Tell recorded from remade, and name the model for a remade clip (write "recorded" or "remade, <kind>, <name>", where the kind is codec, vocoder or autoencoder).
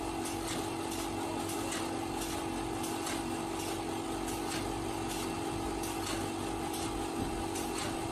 recorded